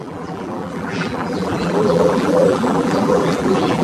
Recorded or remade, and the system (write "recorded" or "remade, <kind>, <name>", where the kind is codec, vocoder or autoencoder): remade, vocoder, BigVGAN v2